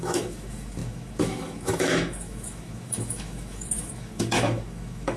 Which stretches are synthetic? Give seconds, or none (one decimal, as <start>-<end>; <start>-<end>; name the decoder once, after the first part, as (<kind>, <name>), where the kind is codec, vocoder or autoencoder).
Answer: 0.0-5.2 (autoencoder, DAC-VAE)